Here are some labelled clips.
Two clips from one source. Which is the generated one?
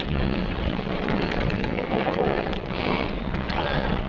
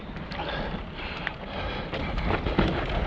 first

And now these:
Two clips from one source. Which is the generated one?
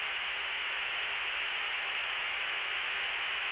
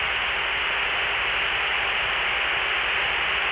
first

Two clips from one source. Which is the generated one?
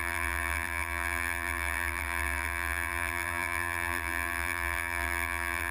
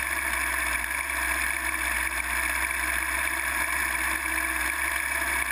first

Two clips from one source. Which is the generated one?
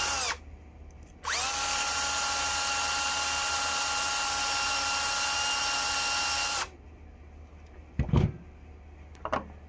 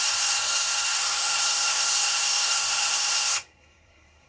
second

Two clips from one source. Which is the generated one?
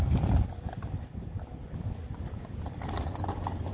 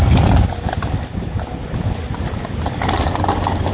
first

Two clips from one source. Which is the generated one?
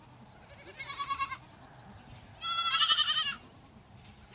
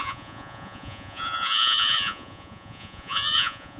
second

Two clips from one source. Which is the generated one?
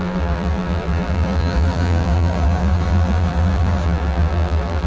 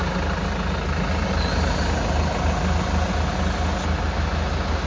first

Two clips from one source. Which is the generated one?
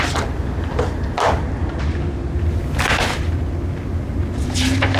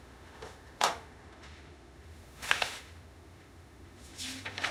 second